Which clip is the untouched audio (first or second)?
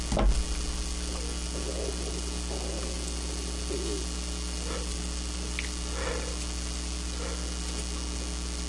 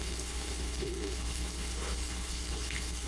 first